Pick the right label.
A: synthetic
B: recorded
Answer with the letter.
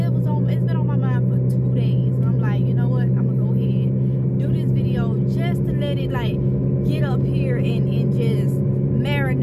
B